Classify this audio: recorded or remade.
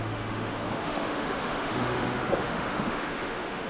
remade